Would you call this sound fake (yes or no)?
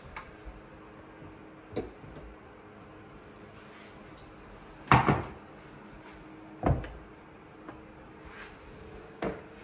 no